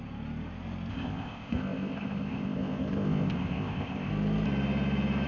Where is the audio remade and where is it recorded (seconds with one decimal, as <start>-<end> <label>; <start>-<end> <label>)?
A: 0.0-0.9 recorded; 0.9-4.1 remade; 4.1-5.3 recorded